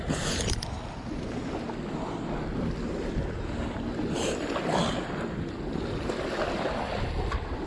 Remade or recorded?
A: recorded